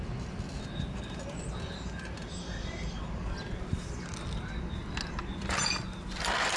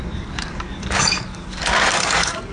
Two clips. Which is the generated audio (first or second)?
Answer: second